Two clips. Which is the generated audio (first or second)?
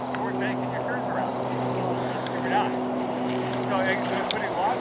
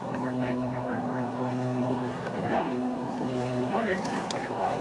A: second